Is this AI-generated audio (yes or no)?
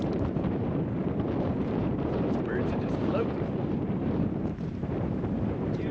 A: yes